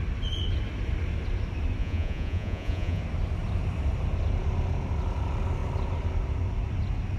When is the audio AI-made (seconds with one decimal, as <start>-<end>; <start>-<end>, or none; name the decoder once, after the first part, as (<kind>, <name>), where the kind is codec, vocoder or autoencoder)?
1.8-3.0 (vocoder, Vocos)